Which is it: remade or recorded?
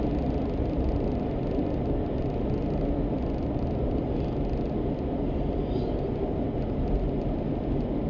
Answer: recorded